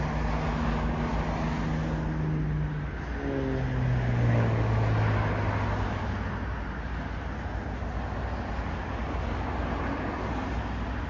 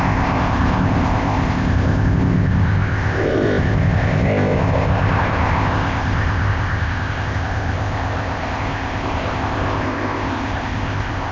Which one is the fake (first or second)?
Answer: second